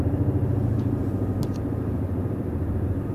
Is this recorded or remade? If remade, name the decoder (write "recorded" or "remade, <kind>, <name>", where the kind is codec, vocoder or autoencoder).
remade, vocoder, BigVGAN v2